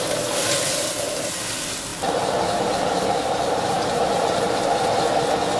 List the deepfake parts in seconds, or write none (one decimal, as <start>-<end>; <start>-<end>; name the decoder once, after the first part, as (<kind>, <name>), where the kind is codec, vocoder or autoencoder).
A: 0.8-1.5 (vocoder, BigVGAN v2); 1.9-4.6